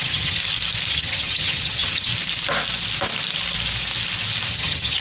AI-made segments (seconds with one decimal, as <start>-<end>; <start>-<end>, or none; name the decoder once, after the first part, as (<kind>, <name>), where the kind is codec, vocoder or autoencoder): 0.0-0.4 (vocoder, HiFi-GAN); 0.9-2.1; 4.5-5.0